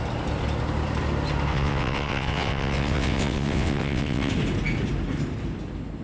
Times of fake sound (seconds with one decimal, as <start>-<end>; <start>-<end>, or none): 1.5-4.3